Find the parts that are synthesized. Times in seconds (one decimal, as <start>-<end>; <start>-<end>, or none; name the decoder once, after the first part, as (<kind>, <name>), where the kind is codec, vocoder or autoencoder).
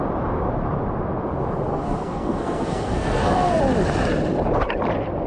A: 1.7-3.6 (codec, SNAC)